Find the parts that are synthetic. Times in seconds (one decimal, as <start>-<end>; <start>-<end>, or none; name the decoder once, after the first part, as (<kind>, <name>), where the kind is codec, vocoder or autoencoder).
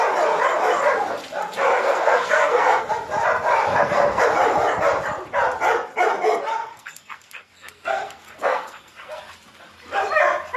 1.7-2.9 (codec, SNAC); 3.7-4.2; 6.6-9.2